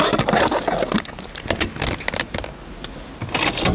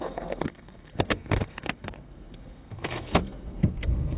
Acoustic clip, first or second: first